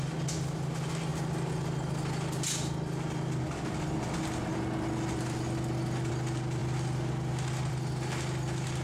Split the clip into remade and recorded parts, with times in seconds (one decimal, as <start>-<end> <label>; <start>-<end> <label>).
0.0-8.8 recorded